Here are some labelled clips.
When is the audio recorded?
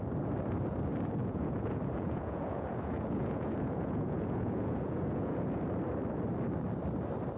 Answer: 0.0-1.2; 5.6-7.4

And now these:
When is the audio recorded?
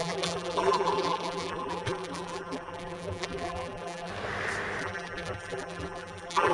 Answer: 4.1-4.8